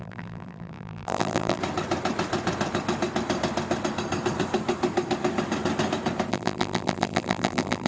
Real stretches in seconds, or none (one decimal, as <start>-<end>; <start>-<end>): 1.6-6.3